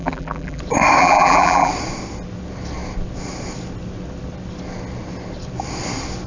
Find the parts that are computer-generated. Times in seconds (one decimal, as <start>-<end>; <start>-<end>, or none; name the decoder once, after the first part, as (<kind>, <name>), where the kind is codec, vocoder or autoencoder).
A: 0.0-0.6 (vocoder, BigVGAN v2); 1.0-1.7